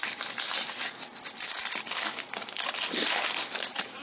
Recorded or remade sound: recorded